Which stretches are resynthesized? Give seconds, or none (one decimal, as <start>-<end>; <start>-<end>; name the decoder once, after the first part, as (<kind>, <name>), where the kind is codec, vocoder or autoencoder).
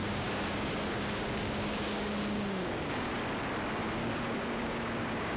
0.0-3.1 (codec, DAC); 3.8-5.4